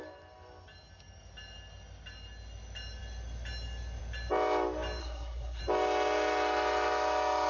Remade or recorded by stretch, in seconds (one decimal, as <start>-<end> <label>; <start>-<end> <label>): 0.0-5.0 recorded; 5.0-5.6 remade; 5.6-7.5 recorded